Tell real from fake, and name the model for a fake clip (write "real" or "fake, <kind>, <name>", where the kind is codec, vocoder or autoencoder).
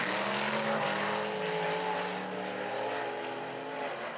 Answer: real